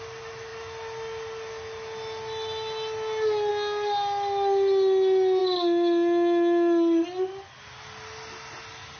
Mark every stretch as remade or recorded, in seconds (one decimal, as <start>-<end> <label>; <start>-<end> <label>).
0.0-9.0 recorded